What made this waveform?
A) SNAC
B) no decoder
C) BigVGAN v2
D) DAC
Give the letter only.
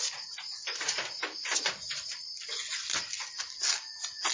B